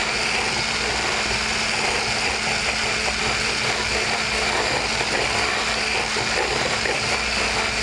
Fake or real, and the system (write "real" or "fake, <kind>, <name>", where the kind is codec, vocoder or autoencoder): real